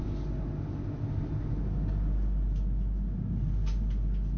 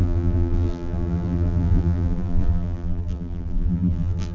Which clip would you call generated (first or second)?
second